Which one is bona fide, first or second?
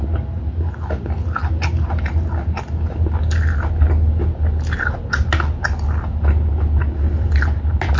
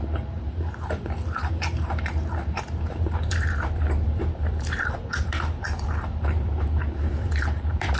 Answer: first